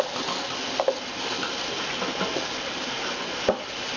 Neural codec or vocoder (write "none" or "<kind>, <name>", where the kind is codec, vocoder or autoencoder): none